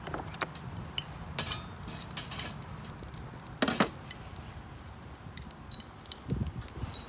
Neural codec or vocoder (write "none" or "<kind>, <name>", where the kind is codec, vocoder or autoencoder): none